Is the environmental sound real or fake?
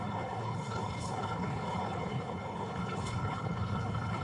fake